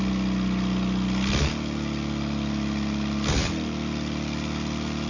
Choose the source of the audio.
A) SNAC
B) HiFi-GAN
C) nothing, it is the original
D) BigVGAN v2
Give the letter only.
C